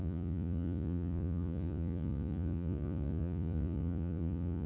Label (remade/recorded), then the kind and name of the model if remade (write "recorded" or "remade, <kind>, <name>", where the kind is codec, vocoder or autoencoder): remade, vocoder, Vocos